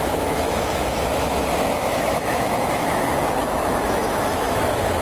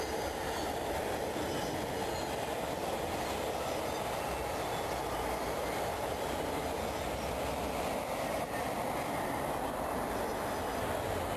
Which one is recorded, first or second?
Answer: second